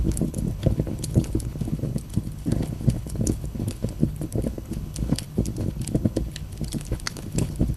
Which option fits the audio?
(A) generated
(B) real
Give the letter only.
A